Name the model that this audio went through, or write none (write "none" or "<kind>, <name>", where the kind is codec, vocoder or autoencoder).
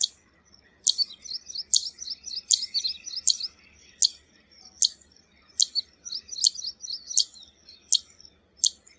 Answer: none